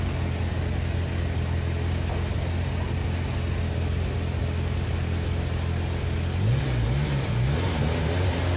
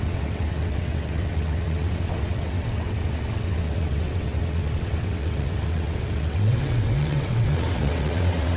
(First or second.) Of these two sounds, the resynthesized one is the second